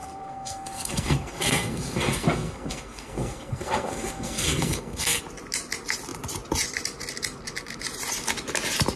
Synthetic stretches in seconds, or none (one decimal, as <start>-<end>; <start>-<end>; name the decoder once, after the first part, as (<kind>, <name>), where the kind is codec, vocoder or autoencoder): 0.0-5.2 (codec, SNAC)